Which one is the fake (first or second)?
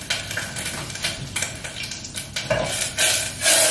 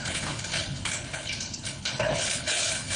second